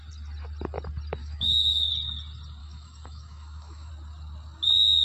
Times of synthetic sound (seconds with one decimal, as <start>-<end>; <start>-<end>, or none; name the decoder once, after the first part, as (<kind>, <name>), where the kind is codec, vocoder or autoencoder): 1.2-1.9 (autoencoder, DAC-VAE); 2.6-3.9